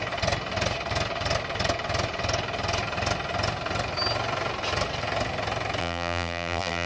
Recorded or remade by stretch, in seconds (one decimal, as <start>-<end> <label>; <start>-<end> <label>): 0.0-5.8 recorded; 5.8-6.9 remade